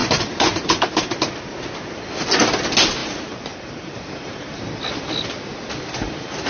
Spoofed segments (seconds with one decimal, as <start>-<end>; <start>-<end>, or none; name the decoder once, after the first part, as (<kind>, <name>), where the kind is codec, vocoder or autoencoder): 0.0-1.2 (vocoder, BigVGAN v2); 3.0-4.6